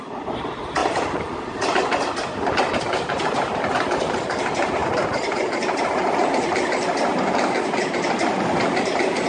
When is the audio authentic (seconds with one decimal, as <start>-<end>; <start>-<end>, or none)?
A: none